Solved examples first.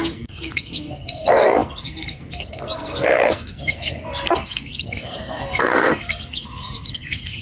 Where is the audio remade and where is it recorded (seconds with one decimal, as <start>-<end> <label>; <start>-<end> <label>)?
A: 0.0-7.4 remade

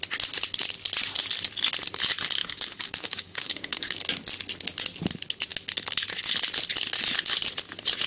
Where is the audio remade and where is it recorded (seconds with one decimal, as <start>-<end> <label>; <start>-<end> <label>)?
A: 0.0-2.4 recorded; 2.4-4.0 remade; 4.0-8.1 recorded

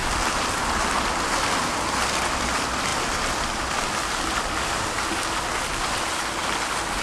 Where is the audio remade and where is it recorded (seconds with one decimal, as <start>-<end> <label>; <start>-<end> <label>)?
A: 0.0-0.6 remade; 0.6-2.9 recorded; 2.9-5.3 remade; 5.3-7.0 recorded

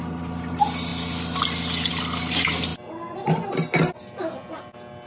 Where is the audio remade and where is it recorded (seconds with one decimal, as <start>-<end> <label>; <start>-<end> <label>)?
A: 0.0-5.1 recorded

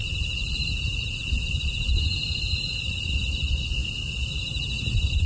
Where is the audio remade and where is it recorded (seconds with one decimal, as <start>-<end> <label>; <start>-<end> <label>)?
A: 0.0-5.3 recorded

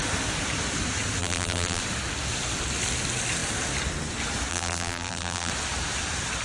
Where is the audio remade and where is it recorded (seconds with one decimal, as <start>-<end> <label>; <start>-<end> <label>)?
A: 0.0-1.2 recorded; 1.2-1.8 remade; 1.8-4.5 recorded; 4.5-5.5 remade; 5.5-6.4 recorded

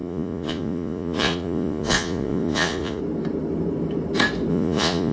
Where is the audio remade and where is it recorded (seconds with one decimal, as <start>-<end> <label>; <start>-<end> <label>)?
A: 0.0-3.0 remade; 3.0-4.5 recorded; 4.5-5.1 remade

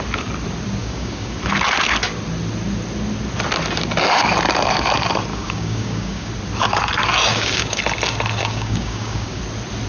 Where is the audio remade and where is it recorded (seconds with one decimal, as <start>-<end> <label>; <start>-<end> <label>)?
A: 0.0-0.8 recorded; 0.8-1.4 remade; 1.4-5.3 recorded; 5.3-6.3 remade; 6.3-7.3 recorded; 7.3-7.8 remade; 7.8-8.4 recorded; 8.4-9.4 remade; 9.4-9.9 recorded